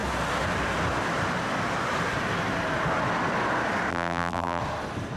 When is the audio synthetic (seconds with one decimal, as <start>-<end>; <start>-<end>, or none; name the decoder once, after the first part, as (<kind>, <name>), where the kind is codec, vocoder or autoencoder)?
3.9-4.6 (vocoder, BigVGAN v2)